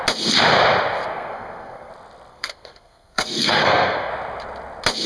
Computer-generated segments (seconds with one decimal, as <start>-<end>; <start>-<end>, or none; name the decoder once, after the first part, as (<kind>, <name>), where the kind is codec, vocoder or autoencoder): 1.1-1.9 (codec, SNAC); 2.3-4.1